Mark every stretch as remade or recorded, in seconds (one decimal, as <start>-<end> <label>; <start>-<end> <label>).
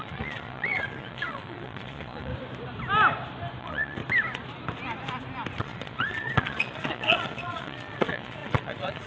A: 0.0-2.3 remade; 2.3-3.6 recorded; 3.6-4.0 remade; 4.0-5.6 recorded; 5.6-9.1 remade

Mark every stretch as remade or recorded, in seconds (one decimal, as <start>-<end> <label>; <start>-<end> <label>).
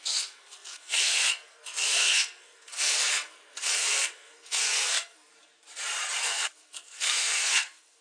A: 0.0-5.3 remade; 5.3-6.2 recorded; 6.2-8.0 remade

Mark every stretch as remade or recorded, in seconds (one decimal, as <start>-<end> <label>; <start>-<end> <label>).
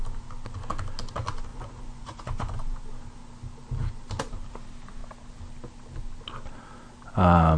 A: 0.0-1.5 recorded; 1.5-2.8 remade; 2.8-7.6 recorded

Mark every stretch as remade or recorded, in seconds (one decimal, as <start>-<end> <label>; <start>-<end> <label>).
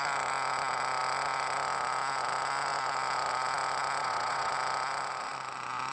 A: 0.0-4.0 recorded; 4.0-4.5 remade; 4.5-5.9 recorded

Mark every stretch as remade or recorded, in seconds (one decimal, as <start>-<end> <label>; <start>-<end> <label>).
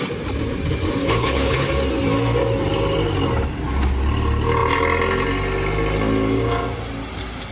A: 0.0-1.0 recorded; 1.0-1.7 remade; 1.7-7.5 recorded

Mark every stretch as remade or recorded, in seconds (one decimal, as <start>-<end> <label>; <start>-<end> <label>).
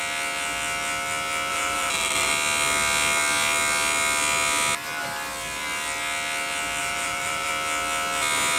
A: 0.0-1.5 recorded; 1.5-2.3 remade; 2.3-6.8 recorded; 6.8-7.5 remade; 7.5-8.6 recorded